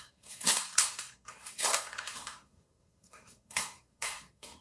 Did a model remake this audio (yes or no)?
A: yes